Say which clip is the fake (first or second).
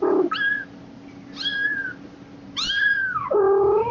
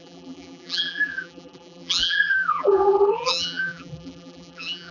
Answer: second